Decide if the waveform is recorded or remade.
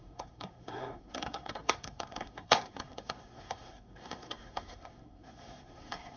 remade